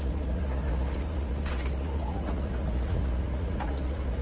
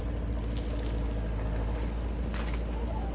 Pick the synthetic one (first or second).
first